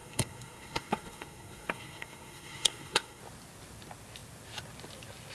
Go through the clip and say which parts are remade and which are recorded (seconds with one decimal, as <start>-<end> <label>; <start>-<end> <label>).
0.0-3.2 remade; 3.2-5.3 recorded